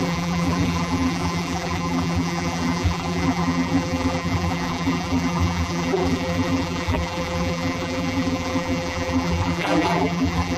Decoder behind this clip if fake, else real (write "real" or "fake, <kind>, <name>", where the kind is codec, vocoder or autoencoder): fake, vocoder, BigVGAN v2